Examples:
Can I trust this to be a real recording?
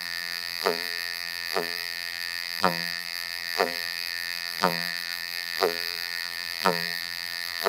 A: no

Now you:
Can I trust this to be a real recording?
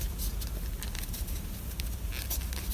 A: yes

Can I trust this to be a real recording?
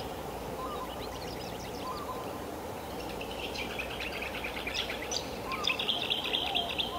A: no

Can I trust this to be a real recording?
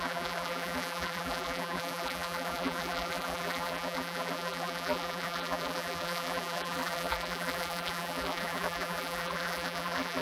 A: no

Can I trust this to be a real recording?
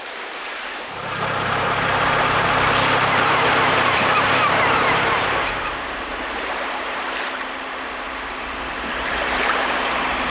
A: no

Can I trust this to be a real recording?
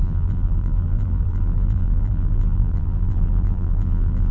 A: no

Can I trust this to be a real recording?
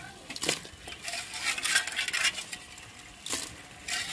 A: yes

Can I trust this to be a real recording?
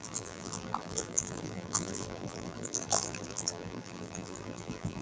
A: no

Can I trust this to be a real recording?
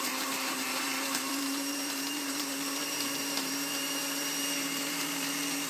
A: no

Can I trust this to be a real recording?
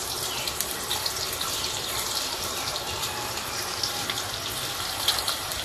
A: no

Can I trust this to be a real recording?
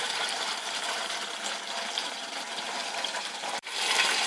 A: no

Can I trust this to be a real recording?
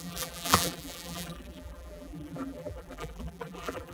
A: no